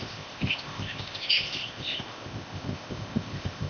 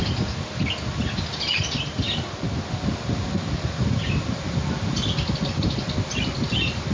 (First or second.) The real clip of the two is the second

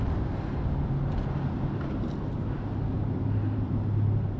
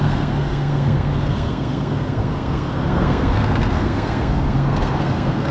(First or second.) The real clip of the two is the first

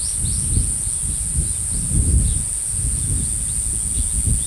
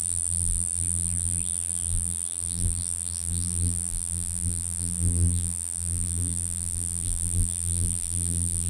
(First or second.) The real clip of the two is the first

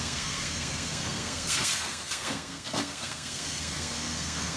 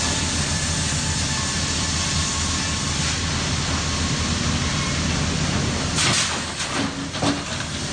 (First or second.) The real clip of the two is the second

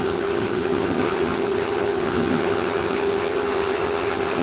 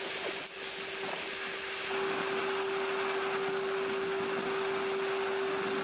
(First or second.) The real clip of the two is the second